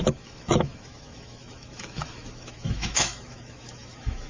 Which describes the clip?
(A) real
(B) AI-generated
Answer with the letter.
B